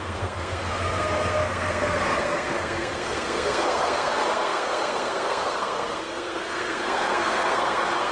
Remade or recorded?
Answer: remade